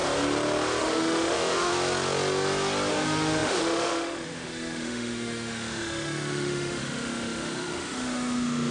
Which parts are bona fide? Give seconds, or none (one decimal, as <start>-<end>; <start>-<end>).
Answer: 0.0-0.8; 1.7-2.9